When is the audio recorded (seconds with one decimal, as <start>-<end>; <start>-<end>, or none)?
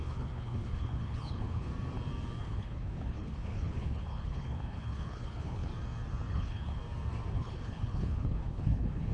1.7-2.4; 5.7-6.3; 6.8-7.3